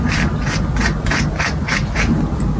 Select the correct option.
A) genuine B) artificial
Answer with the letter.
A